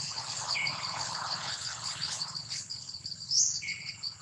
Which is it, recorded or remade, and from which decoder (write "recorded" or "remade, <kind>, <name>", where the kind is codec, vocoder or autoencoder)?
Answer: remade, codec, HILCodec